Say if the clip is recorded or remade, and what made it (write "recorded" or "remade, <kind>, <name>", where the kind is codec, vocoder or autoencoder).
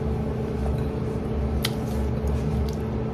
recorded